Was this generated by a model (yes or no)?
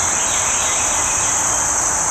no